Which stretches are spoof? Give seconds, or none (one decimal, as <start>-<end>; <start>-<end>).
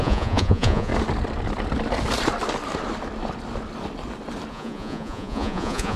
0.0-0.9; 4.5-6.0